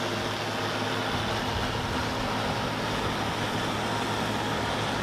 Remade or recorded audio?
recorded